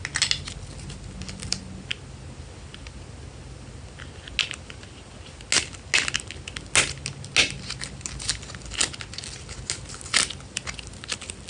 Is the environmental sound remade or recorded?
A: recorded